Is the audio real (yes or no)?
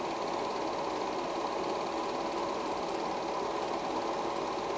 yes